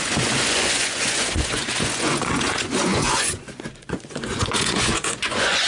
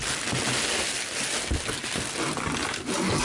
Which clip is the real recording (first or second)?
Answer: second